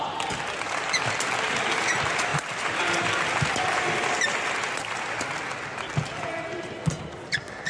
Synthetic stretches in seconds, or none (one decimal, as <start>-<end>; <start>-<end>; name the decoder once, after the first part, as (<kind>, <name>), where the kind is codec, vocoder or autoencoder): none